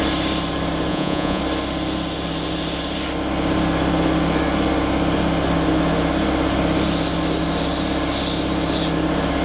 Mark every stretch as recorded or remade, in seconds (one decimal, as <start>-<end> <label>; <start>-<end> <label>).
0.0-0.9 recorded; 0.9-1.4 remade; 1.4-9.4 recorded